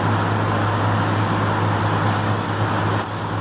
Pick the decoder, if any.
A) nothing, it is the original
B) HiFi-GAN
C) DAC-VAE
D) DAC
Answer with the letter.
A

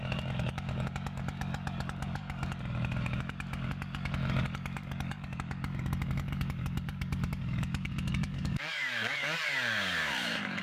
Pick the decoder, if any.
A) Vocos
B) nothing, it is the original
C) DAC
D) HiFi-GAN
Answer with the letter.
C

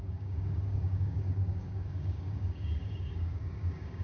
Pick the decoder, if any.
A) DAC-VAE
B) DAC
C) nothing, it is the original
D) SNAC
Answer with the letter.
B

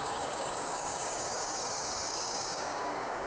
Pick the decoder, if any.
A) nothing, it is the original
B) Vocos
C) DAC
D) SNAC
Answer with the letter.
C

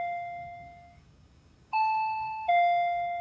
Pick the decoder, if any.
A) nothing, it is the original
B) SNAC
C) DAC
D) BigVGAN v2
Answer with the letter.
C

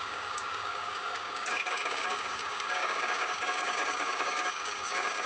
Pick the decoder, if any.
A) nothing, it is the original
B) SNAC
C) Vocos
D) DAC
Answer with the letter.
D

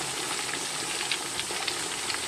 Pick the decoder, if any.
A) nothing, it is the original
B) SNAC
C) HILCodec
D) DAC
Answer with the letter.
A